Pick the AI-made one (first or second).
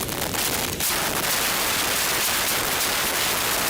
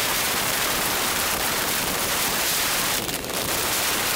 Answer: second